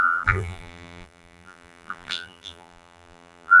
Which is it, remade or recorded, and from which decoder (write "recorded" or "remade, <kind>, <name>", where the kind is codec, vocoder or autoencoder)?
remade, vocoder, BigVGAN v2